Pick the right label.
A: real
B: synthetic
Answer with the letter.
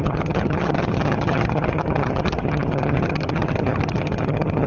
B